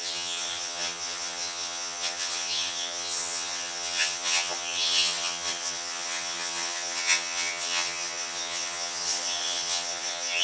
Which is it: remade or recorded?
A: remade